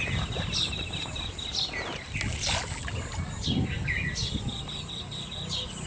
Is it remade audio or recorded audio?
recorded